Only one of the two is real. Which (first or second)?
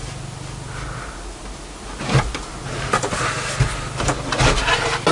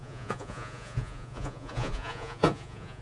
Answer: first